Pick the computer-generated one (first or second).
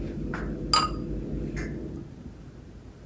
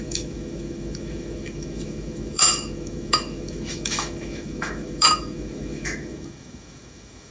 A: second